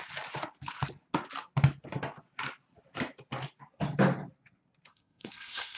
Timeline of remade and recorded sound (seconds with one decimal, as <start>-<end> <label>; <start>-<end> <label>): 0.0-4.9 recorded; 4.9-5.8 remade